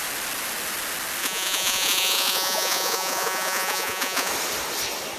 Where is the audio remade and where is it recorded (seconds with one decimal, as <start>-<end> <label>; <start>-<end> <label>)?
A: 0.0-1.2 recorded; 1.2-4.3 remade; 4.3-5.2 recorded